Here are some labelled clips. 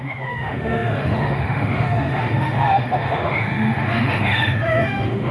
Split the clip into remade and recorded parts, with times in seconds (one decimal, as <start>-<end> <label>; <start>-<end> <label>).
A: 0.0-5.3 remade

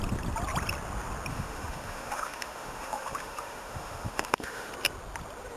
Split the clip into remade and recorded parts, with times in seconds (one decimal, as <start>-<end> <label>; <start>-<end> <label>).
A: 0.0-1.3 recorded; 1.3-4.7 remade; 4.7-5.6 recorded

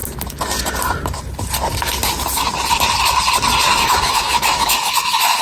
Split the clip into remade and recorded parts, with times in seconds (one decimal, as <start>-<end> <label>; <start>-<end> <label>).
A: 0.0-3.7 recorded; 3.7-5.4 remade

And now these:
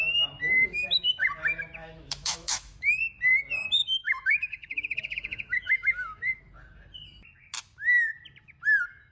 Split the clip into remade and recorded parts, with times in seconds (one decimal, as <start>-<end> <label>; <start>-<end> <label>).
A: 0.0-0.4 recorded; 0.4-1.1 remade; 1.1-1.8 recorded; 1.8-3.0 remade; 3.0-3.8 recorded; 3.8-6.4 remade; 6.4-9.1 recorded